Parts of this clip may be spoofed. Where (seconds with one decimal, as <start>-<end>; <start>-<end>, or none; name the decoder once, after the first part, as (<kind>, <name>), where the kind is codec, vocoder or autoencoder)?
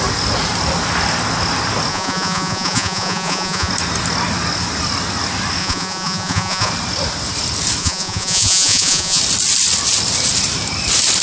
1.9-3.7 (vocoder, Vocos); 5.6-6.7; 7.8-9.2